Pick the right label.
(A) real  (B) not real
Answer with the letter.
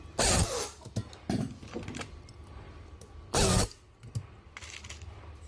A